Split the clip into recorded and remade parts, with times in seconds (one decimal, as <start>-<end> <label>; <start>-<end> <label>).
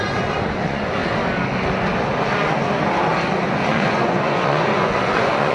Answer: 0.0-1.0 remade; 1.0-3.5 recorded; 3.5-5.5 remade